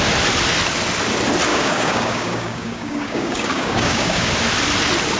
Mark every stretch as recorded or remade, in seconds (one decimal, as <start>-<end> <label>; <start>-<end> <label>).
0.0-1.5 recorded; 1.5-4.3 remade; 4.3-5.2 recorded